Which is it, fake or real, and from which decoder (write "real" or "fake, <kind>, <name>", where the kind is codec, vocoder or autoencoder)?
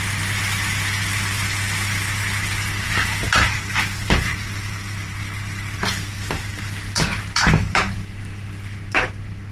real